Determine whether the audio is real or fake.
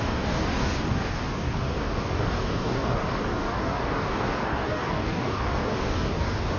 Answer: fake